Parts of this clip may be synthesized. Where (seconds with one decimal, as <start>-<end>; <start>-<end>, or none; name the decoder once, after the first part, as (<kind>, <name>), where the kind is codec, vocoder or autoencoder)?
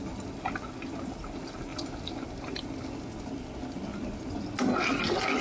none